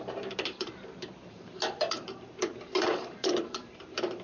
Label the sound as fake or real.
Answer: fake